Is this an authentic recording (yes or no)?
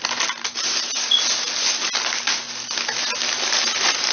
yes